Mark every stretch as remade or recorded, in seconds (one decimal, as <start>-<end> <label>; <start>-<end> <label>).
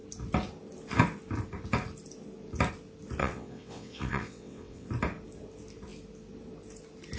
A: 0.0-3.2 recorded; 3.2-4.9 remade; 4.9-7.2 recorded